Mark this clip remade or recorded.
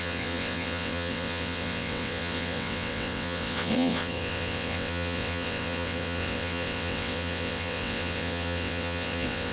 remade